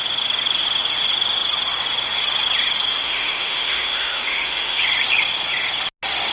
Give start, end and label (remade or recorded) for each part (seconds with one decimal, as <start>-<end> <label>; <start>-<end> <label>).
0.0-2.9 recorded; 2.9-4.8 remade; 4.8-6.3 recorded